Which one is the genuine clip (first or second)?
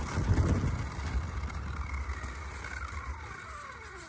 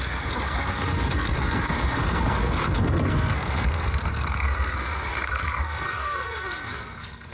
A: first